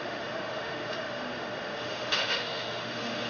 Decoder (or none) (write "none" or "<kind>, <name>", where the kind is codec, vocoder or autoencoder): autoencoder, DAC-VAE